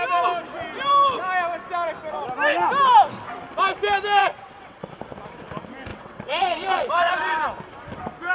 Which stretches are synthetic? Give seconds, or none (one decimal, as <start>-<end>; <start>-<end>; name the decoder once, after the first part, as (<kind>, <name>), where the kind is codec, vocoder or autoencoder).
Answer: 4.2-4.9 (vocoder, WaveNeXt); 5.9-7.4